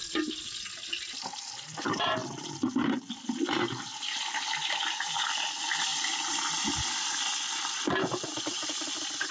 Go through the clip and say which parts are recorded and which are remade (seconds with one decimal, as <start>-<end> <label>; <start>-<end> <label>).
0.0-2.2 recorded; 2.2-3.2 remade; 3.2-5.9 recorded; 5.9-7.4 remade; 7.4-9.3 recorded